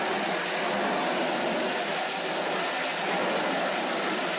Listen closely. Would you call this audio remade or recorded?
recorded